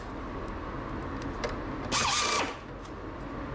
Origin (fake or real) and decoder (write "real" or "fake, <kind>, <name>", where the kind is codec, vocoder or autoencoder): real